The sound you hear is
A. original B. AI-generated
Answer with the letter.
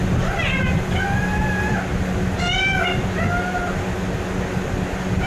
A